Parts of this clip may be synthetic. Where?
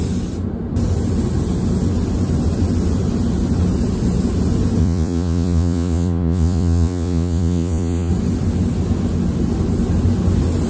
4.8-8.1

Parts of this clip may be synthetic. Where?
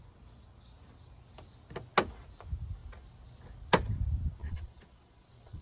4.4-5.6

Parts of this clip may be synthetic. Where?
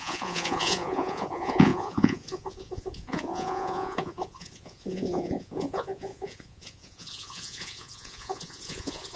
0.0-9.2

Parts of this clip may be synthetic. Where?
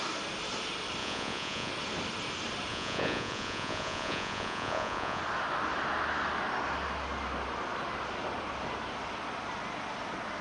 1.0-1.7; 2.7-5.2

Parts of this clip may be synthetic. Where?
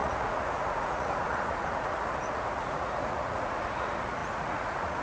0.0-5.0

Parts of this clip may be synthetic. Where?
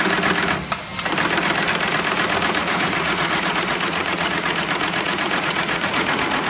2.6-6.5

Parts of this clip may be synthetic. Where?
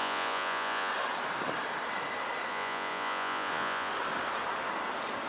0.0-0.9; 2.5-3.9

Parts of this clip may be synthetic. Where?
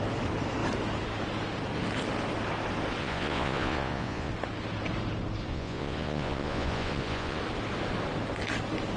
3.0-4.3; 5.5-7.4